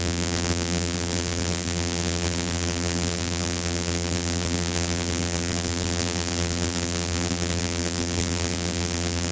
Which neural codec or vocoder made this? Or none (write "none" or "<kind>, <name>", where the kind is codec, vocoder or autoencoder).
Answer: vocoder, BigVGAN v2